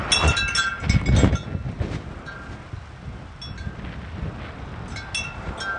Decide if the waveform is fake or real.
real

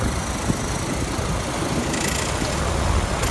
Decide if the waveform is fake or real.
real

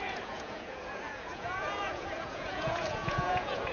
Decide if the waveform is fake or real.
fake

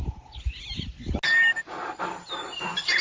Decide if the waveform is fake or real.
real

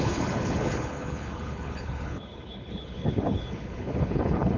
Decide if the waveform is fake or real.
fake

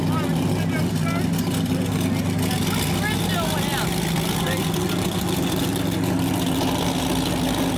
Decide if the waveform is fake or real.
real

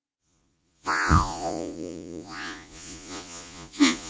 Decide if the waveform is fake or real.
fake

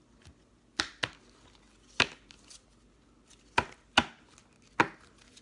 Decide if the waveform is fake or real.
real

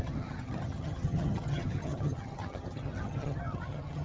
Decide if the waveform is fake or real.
fake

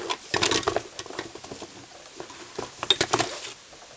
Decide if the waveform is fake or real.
real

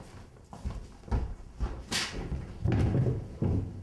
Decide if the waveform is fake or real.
real